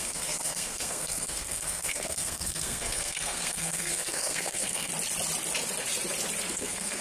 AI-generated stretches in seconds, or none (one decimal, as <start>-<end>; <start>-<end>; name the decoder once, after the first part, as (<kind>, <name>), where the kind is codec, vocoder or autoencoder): 0.0-4.9 (codec, SNAC); 6.5-7.0